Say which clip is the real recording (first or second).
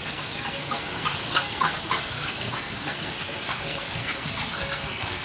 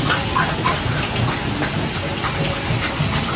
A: second